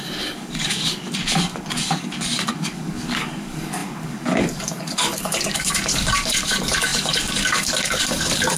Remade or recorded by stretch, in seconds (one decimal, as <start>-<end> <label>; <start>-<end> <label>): 0.0-8.6 remade